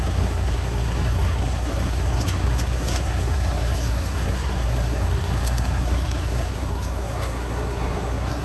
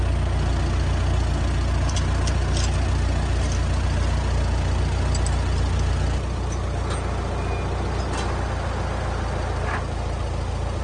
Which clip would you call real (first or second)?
second